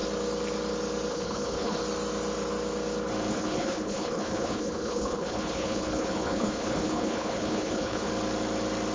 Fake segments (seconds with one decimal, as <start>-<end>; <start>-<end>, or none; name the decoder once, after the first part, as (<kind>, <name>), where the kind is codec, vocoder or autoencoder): 1.1-1.8 (codec, HILCodec); 3.3-8.1